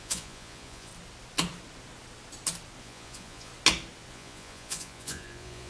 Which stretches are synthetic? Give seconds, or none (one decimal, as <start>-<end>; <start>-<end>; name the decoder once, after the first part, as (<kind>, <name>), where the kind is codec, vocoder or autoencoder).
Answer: 0.0-0.9 (vocoder, Vocos); 2.8-3.5; 4.1-5.7